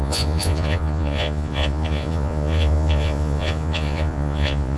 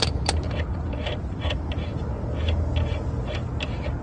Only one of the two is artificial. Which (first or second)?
first